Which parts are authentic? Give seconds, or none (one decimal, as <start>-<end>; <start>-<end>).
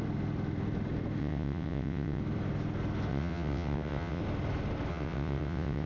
0.0-1.2; 2.2-3.1; 4.2-4.9